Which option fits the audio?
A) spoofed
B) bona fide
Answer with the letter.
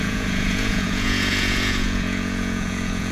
A